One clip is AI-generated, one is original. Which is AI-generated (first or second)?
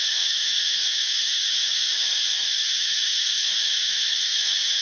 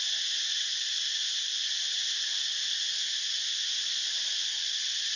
first